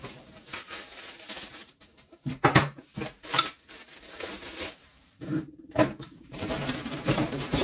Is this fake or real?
fake